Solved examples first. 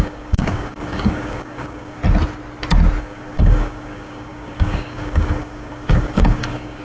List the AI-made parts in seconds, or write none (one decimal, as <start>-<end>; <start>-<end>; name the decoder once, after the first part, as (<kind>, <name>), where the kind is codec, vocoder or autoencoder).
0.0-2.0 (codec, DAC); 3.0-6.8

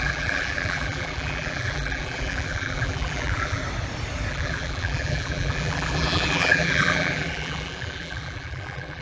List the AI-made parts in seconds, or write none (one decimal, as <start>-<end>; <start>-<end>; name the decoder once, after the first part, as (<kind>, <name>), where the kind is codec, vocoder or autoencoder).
0.0-3.6 (vocoder, BigVGAN v2); 4.3-9.0

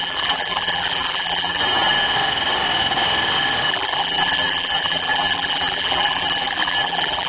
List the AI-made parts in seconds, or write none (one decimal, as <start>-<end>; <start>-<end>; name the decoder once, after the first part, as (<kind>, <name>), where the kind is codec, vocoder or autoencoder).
0.0-1.6 (vocoder, BigVGAN v2); 3.7-7.3

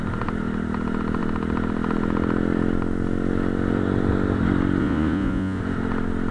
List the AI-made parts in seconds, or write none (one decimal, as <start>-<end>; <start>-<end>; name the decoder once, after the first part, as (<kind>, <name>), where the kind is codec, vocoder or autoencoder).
4.8-5.6 (vocoder, Vocos)

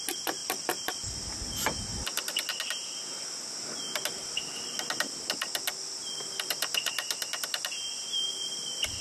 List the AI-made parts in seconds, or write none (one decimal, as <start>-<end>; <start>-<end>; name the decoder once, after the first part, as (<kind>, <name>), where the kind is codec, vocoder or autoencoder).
0.4-1.9 (vocoder, BigVGAN v2); 6.0-9.0

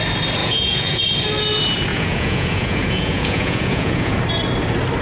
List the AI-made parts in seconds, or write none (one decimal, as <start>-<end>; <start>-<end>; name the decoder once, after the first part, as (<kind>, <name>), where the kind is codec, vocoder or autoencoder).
0.4-1.0 (vocoder, Vocos); 1.9-4.2